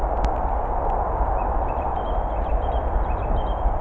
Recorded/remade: recorded